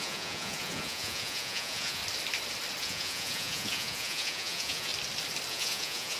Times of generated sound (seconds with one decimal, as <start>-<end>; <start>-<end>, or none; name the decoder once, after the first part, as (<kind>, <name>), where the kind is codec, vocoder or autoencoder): 0.0-2.0 (vocoder, Vocos); 2.8-4.9; 5.5-6.2